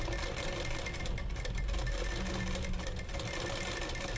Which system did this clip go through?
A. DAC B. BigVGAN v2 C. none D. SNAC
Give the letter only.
C